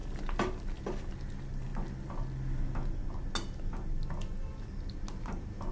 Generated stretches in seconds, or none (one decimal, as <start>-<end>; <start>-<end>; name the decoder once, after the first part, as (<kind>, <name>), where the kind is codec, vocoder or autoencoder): none